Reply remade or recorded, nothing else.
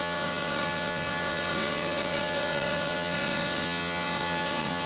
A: remade